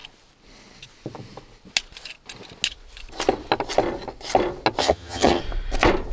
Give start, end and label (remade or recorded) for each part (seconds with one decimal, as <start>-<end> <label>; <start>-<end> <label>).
0.0-4.8 recorded; 4.8-5.4 remade; 5.4-6.1 recorded